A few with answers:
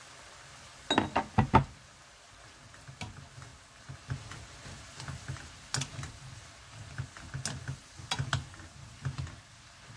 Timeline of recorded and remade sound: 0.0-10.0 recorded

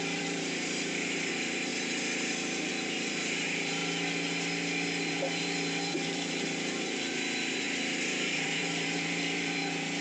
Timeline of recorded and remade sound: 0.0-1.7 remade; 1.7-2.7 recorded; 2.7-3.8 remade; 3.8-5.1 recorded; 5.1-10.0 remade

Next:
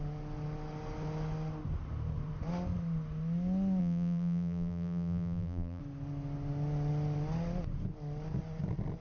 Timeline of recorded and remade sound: 0.0-3.8 recorded; 3.8-5.8 remade; 5.8-9.0 recorded

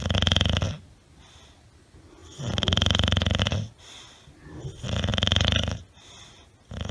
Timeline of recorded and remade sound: 0.0-2.2 recorded; 2.2-3.4 remade; 3.4-5.1 recorded; 5.1-5.8 remade; 5.8-6.9 recorded

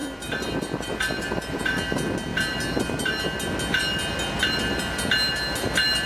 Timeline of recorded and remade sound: 0.0-1.6 remade; 1.6-6.1 recorded